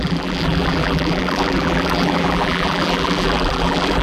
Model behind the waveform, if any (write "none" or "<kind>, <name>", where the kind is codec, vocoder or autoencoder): vocoder, BigVGAN v2